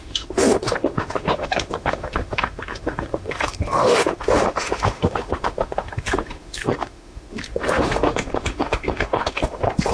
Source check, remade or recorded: remade